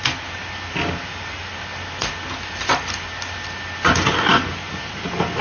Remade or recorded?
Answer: recorded